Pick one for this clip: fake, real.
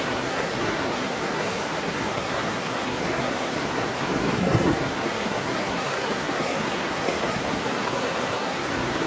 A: fake